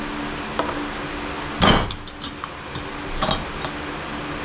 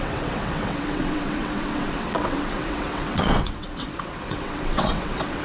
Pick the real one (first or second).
first